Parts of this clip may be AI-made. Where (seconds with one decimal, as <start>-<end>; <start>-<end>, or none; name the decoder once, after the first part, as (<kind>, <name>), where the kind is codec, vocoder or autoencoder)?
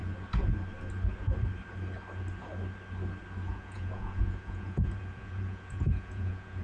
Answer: 3.5-6.6 (vocoder, Vocos)